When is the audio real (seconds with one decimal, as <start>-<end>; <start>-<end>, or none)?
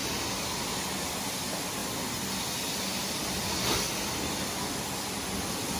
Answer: 0.0-5.8